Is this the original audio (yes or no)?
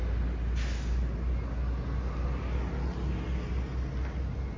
yes